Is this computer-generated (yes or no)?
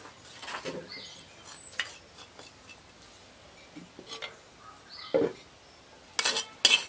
no